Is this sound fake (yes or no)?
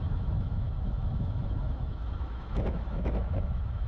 yes